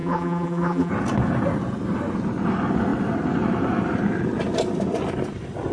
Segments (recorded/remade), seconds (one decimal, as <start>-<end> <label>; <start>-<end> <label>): 0.0-0.9 remade; 0.9-5.7 recorded

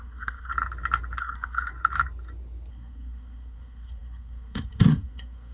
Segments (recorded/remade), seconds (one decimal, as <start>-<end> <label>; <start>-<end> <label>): 0.0-0.5 remade; 0.5-1.2 recorded; 1.2-1.7 remade; 1.7-2.7 recorded; 2.7-5.5 remade

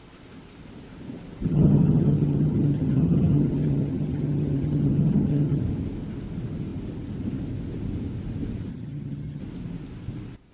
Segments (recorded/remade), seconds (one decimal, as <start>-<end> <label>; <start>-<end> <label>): 0.0-1.4 recorded; 1.4-5.6 remade; 5.6-8.7 recorded; 8.7-9.4 remade; 9.4-10.5 recorded

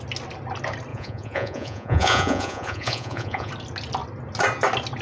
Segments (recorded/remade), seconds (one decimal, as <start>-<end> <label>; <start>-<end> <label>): 0.0-0.9 recorded; 0.9-3.5 remade; 3.5-5.0 recorded

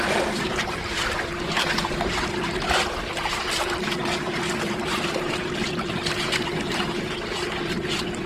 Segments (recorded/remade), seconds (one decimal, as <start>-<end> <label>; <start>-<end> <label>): 0.0-8.3 remade

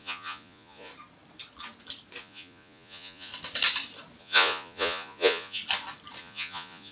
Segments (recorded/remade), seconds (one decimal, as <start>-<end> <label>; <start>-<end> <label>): 0.0-0.9 remade; 0.9-2.2 recorded; 2.2-3.3 remade; 3.3-4.2 recorded; 4.2-5.6 remade; 5.6-6.2 recorded; 6.2-6.9 remade

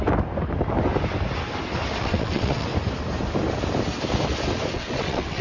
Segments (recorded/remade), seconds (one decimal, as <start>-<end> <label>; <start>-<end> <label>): 0.0-2.0 recorded; 2.0-2.7 remade; 2.7-4.7 recorded; 4.7-5.4 remade

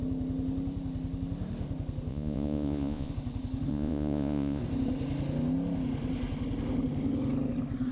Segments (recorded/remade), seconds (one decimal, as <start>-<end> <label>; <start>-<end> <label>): 0.0-2.1 recorded; 2.1-3.1 remade; 3.1-3.7 recorded; 3.7-4.6 remade; 4.6-7.9 recorded